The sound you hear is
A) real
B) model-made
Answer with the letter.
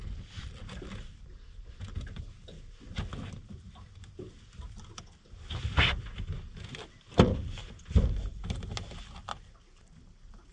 A